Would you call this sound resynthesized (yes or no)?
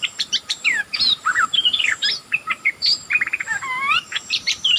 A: yes